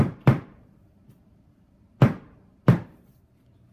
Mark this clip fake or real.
real